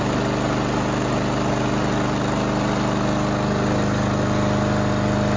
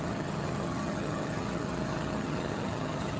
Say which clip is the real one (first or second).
first